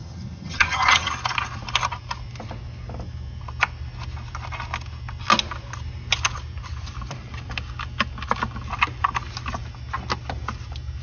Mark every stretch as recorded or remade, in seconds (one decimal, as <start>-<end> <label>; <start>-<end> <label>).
0.0-1.1 remade; 1.1-11.0 recorded